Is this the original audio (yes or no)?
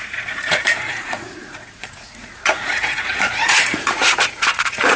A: no